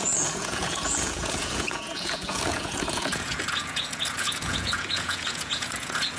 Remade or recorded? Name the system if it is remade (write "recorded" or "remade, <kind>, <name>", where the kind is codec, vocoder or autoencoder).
remade, vocoder, Vocos